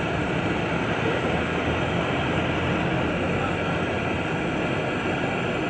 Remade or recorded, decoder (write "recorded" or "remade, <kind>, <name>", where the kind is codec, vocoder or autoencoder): recorded